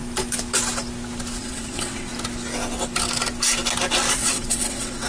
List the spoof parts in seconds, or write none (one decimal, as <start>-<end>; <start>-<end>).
1.4-2.1; 4.1-5.1